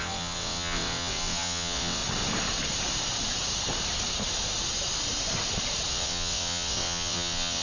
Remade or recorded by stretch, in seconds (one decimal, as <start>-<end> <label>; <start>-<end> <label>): 0.0-2.0 remade; 2.0-5.9 recorded; 5.9-7.6 remade